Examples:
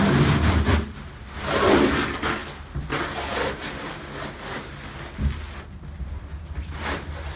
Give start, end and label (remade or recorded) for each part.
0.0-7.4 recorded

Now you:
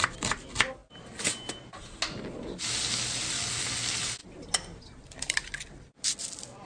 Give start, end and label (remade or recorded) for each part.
0.0-6.7 recorded

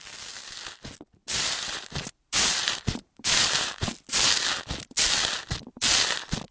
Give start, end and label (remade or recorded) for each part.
0.0-1.2 recorded; 1.2-4.3 remade; 4.3-6.5 recorded

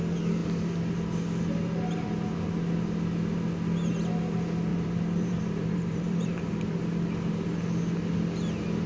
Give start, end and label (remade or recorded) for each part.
0.0-4.7 recorded; 4.7-6.8 remade; 6.8-8.9 recorded

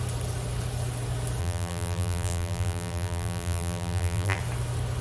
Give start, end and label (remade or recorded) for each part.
0.0-1.4 recorded; 1.4-4.4 remade; 4.4-5.0 recorded